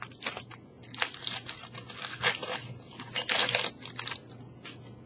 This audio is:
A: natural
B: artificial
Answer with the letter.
A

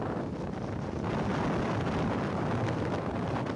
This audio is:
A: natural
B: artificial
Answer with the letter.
A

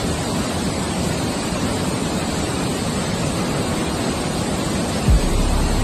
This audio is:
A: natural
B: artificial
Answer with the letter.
B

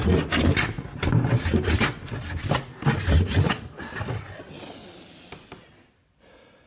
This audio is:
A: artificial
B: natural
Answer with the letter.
B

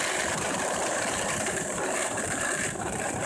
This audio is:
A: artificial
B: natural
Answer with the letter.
A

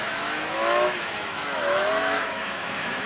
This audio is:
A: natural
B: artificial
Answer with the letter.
B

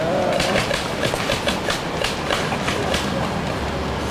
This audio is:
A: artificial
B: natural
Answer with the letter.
B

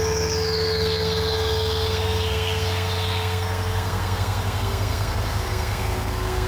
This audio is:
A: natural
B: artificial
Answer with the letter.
B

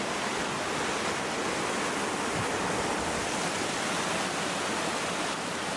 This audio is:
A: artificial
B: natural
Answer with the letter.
B